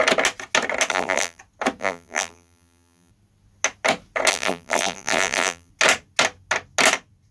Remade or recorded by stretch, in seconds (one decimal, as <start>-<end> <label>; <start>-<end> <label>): 0.0-0.9 recorded; 0.9-1.4 remade; 1.4-1.8 recorded; 1.8-3.1 remade; 3.1-4.3 recorded; 4.3-5.7 remade; 5.7-7.3 recorded